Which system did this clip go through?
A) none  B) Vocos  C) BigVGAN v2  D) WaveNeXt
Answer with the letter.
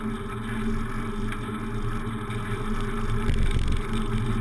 A